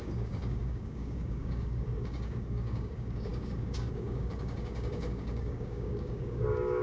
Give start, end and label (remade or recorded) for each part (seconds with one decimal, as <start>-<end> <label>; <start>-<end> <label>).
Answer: 0.0-6.8 remade